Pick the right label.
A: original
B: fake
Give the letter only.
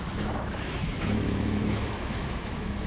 B